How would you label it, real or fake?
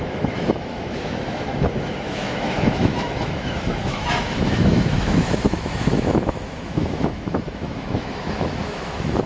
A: fake